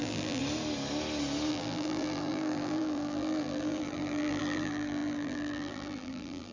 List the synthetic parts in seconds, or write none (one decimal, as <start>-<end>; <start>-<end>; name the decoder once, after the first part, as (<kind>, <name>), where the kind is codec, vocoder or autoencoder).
0.0-0.4 (vocoder, BigVGAN v2); 1.5-6.5